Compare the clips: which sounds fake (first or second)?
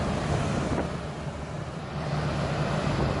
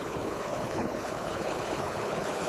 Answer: second